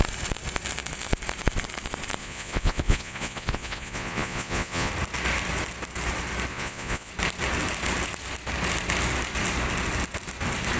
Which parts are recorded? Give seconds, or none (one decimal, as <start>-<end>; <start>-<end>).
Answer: 0.0-2.2; 4.9-6.5; 7.1-10.8